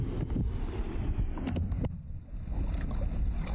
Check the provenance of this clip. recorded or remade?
recorded